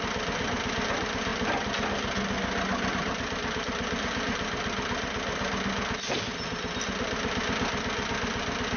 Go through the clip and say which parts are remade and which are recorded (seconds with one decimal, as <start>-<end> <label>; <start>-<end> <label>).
0.0-8.8 recorded